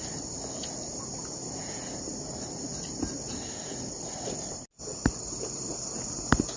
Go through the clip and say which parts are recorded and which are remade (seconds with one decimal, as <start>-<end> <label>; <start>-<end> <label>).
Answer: 0.0-6.6 recorded